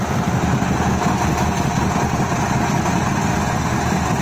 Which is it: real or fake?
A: real